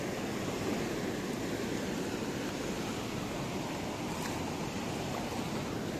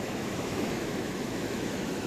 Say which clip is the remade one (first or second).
second